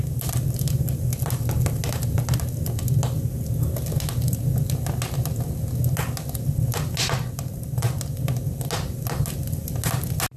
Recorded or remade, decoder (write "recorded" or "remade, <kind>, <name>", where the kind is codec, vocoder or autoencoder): recorded